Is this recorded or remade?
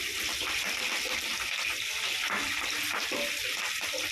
recorded